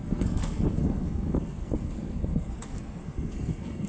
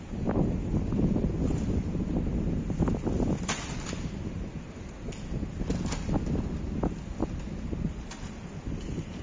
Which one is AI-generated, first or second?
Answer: first